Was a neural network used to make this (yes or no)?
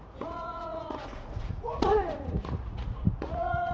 yes